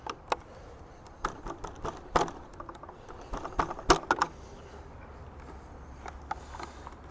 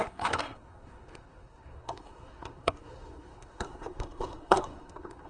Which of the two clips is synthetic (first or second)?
second